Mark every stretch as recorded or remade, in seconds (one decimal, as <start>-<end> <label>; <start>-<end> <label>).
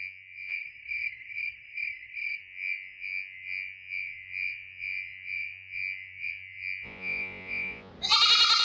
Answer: 0.0-0.6 remade; 0.6-2.4 recorded; 2.4-7.9 remade; 7.9-8.6 recorded